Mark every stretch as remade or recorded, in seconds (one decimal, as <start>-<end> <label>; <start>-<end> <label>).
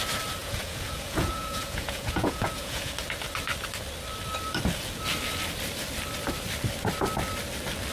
0.0-0.4 recorded; 0.4-2.9 remade; 2.9-7.9 recorded